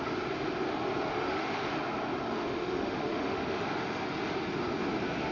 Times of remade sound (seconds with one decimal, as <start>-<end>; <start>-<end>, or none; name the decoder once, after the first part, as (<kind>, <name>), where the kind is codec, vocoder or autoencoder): 1.1-1.7 (autoencoder, DAC-VAE); 2.4-3.8